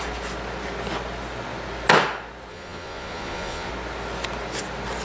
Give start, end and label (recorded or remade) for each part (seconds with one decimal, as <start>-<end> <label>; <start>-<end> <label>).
0.0-2.5 recorded; 2.5-3.7 remade; 3.7-5.0 recorded